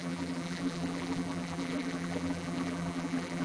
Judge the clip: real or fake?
fake